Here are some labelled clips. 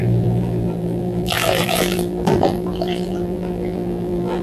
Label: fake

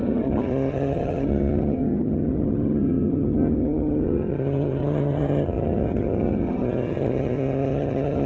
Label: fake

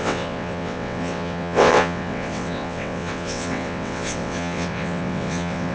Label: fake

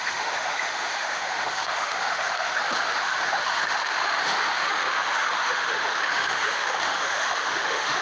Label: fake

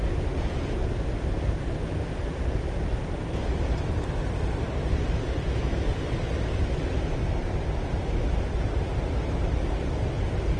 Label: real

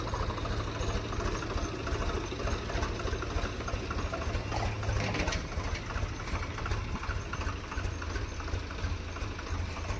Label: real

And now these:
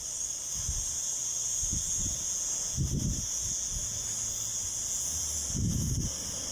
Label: real